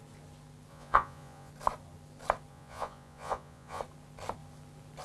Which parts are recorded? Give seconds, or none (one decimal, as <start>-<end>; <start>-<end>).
0.0-0.7; 1.5-2.5; 3.8-5.0